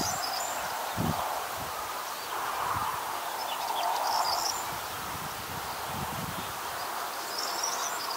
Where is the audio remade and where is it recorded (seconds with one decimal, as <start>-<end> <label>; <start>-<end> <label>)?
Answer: 0.0-8.2 recorded